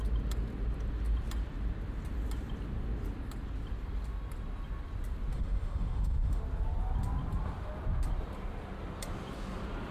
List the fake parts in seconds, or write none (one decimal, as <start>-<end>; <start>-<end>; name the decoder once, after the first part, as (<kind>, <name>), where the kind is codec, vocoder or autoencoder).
5.3-6.4 (autoencoder, DAC-VAE)

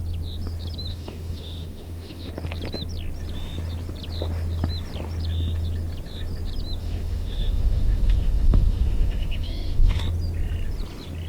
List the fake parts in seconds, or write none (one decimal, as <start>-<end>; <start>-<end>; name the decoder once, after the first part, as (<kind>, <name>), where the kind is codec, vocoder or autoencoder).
0.9-2.3 (autoencoder, DAC-VAE); 6.8-10.0

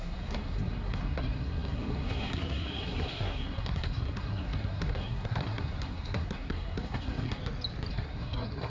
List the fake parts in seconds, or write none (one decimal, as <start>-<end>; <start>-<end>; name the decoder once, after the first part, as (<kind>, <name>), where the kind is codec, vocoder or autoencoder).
0.0-7.4 (codec, SNAC); 7.9-8.7